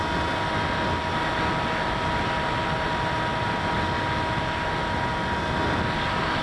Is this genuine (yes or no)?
yes